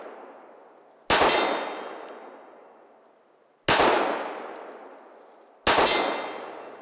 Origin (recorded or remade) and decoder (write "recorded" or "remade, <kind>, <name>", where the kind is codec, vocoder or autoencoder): recorded